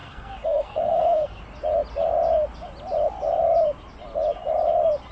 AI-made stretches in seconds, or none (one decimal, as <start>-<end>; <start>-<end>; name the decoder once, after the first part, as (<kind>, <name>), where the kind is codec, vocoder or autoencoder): 0.0-1.4 (codec, SNAC)